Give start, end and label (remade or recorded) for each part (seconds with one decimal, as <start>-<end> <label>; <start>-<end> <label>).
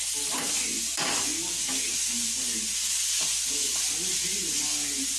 0.0-1.3 recorded; 1.3-4.4 remade; 4.4-5.2 recorded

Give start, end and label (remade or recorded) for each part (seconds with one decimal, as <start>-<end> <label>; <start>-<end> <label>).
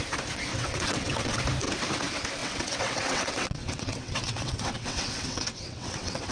0.0-0.5 recorded; 0.5-1.4 remade; 1.4-2.4 recorded; 2.4-6.3 remade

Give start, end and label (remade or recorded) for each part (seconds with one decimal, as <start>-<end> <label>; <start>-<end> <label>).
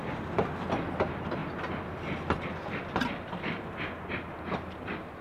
0.0-5.2 recorded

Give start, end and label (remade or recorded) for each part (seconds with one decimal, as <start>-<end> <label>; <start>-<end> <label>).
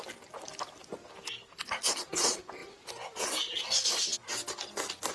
0.0-5.1 recorded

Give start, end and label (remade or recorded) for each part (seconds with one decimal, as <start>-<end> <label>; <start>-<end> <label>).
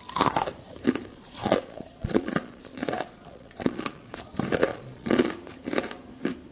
0.0-1.1 recorded; 1.1-4.2 remade; 4.2-4.7 recorded; 4.7-5.3 remade; 5.3-6.5 recorded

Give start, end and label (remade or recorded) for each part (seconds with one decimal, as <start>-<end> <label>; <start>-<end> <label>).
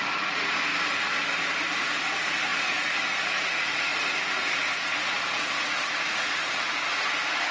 0.0-0.7 remade; 0.7-1.7 recorded; 1.7-7.5 remade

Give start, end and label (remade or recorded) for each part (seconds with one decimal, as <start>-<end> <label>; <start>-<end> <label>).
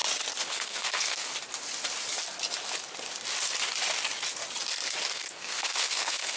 0.0-0.5 recorded; 0.5-1.3 remade; 1.3-5.1 recorded; 5.1-6.4 remade